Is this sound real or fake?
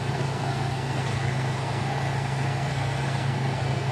fake